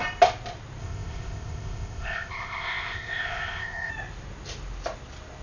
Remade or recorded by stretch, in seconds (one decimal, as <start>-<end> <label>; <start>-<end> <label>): 0.0-0.8 recorded; 0.8-3.9 remade; 3.9-5.4 recorded